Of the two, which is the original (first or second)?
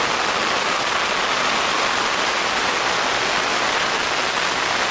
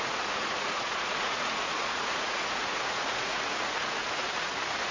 first